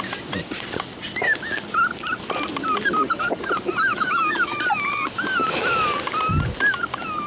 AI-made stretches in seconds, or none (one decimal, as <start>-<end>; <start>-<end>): 3.9-4.6

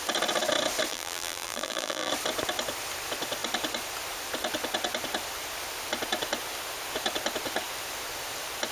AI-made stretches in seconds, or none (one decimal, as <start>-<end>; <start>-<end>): 0.9-2.1

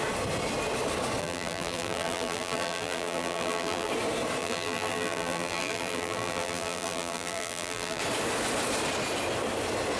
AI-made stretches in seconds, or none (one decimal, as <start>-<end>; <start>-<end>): 1.2-3.9; 4.4-8.0